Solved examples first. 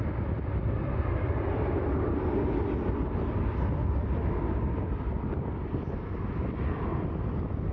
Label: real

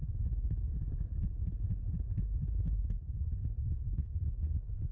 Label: real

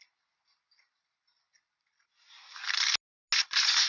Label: real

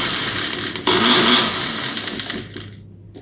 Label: real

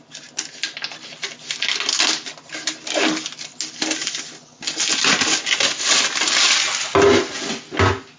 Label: real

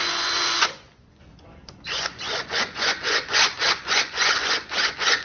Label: fake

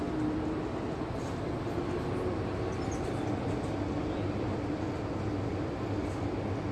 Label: real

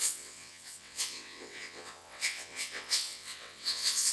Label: fake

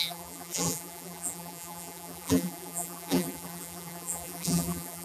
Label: fake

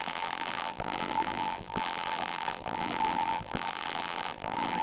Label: fake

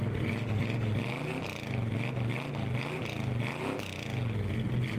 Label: real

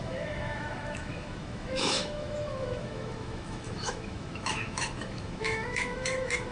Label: fake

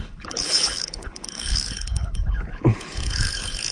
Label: fake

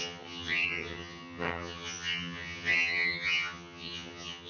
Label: fake